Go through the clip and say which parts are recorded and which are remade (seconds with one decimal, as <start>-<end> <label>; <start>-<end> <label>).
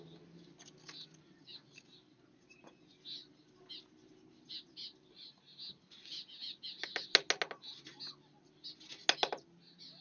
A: 0.0-10.0 recorded